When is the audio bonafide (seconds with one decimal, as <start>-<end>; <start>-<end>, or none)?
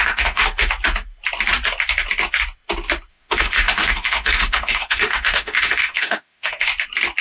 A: 0.4-3.1; 6.7-7.2